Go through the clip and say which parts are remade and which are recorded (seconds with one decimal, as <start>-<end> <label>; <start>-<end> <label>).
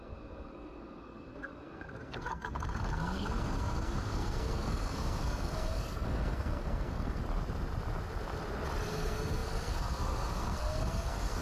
0.0-7.2 remade; 7.2-8.9 recorded; 8.9-11.4 remade